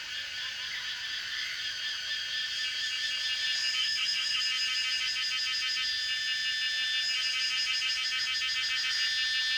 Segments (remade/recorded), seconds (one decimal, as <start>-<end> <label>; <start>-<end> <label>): 0.0-3.8 recorded; 3.8-4.4 remade; 4.4-9.6 recorded